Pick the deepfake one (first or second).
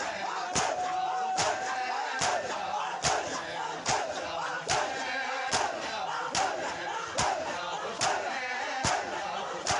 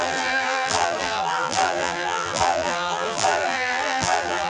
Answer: second